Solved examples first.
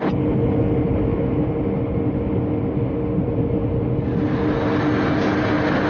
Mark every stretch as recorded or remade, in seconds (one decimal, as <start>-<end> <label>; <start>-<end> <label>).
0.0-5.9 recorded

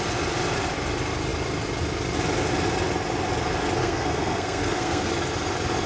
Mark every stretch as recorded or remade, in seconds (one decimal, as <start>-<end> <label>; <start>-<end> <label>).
0.0-3.8 recorded; 3.8-5.1 remade; 5.1-5.9 recorded

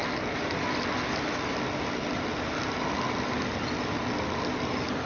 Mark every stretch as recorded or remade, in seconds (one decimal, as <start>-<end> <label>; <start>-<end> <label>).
0.0-5.1 recorded

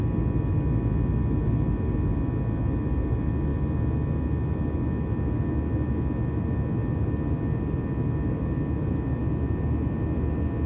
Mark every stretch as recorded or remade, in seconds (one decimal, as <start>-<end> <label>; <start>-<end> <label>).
0.0-10.7 recorded

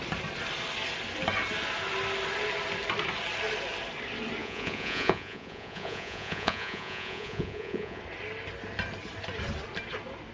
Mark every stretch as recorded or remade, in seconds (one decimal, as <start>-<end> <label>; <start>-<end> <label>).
0.0-4.4 recorded; 4.4-8.0 remade; 8.0-10.3 recorded